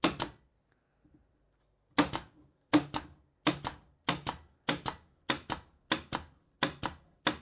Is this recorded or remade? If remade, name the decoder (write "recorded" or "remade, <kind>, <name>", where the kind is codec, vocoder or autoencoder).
recorded